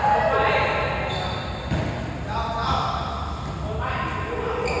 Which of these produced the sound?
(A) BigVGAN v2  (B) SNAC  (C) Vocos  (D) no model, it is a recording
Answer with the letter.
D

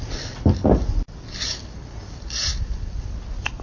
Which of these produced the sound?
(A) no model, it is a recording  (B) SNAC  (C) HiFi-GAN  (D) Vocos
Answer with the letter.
A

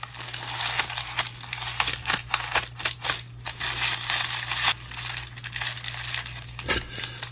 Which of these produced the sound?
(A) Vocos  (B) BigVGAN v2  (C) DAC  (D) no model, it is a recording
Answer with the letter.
D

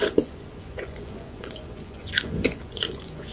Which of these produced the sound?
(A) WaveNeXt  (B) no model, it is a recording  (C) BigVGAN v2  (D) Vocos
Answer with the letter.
D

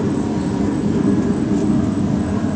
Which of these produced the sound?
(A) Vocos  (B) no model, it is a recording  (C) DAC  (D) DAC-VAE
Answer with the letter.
B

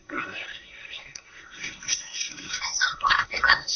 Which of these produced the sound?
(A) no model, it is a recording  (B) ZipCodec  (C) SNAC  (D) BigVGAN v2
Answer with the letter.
C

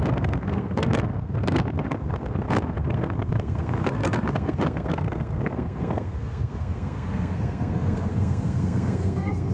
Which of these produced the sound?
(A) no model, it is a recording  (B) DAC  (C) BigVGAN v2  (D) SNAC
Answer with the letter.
D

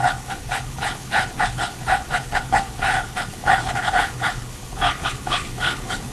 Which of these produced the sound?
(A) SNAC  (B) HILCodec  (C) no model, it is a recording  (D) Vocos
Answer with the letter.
B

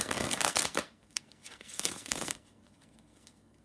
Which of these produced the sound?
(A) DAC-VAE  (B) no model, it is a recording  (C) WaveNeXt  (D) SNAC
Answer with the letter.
D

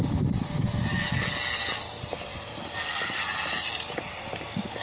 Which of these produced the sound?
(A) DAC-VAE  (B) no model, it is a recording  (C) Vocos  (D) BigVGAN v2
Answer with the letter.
B